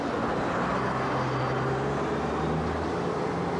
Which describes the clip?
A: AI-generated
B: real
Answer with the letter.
B